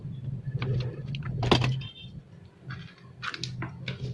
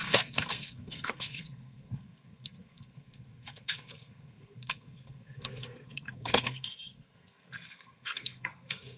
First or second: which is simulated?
second